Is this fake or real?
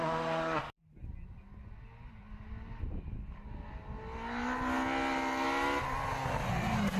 real